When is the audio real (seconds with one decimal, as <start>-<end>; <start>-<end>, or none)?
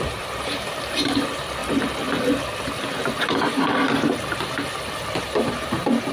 1.6-5.2